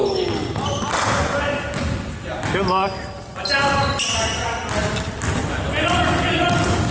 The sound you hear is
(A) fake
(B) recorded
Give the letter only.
B